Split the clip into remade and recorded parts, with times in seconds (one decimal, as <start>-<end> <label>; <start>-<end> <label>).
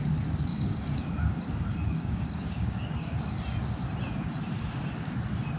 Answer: 0.0-0.5 recorded; 0.5-3.3 remade; 3.3-5.6 recorded